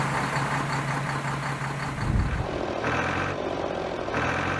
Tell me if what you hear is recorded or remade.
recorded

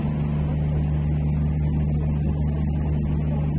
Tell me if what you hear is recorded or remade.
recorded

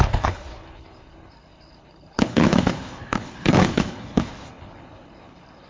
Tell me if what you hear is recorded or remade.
remade